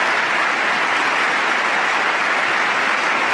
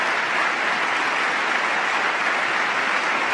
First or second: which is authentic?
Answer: second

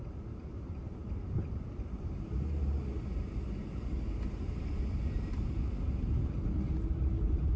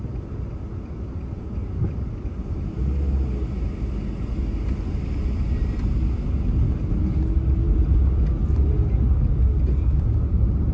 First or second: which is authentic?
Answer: second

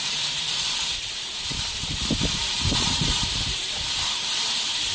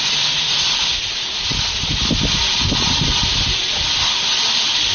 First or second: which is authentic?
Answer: second